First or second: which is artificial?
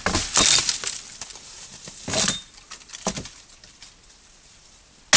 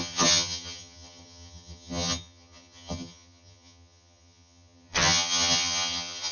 second